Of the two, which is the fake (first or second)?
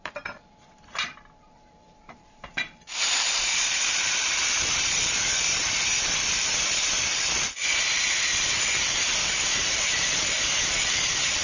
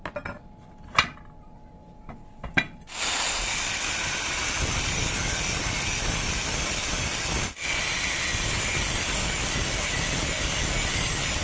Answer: first